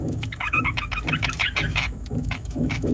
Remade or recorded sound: remade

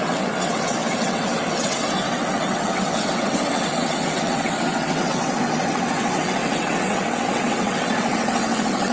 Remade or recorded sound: remade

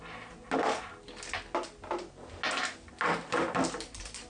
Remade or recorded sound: recorded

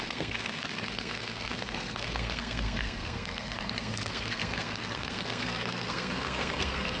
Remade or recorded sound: remade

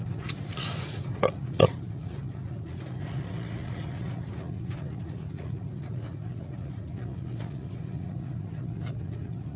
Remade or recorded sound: remade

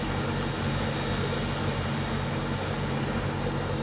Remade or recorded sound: recorded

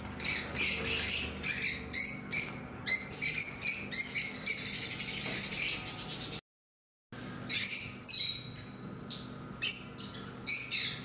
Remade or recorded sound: recorded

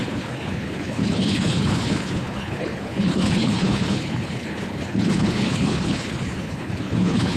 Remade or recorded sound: remade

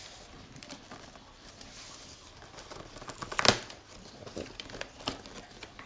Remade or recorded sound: recorded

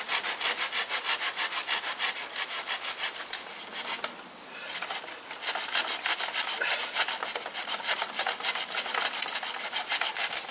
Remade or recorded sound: recorded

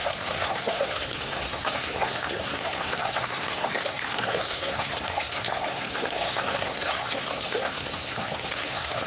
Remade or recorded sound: remade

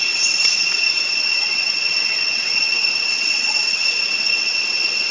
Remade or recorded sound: remade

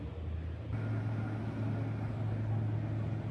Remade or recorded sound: recorded